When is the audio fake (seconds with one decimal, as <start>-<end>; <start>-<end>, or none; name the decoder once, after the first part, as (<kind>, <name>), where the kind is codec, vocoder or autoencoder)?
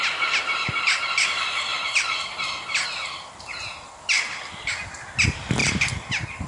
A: none